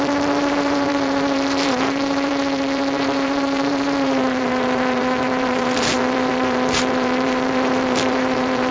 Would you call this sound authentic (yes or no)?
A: no